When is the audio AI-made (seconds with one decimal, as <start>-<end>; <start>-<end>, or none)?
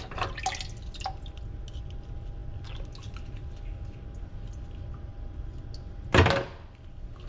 none